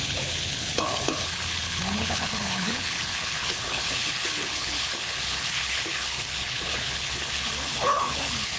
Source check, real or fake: fake